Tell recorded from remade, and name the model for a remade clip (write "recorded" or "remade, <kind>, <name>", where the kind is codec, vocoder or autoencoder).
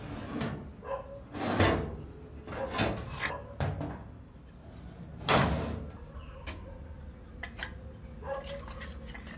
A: recorded